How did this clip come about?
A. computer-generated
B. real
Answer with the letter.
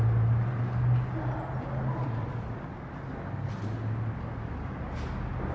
B